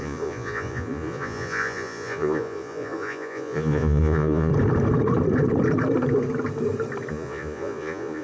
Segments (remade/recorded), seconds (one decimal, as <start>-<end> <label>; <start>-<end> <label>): 0.0-4.5 remade; 4.5-7.1 recorded; 7.1-8.2 remade